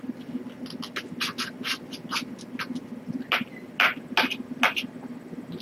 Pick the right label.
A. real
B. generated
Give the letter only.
A